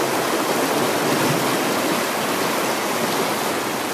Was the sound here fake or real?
real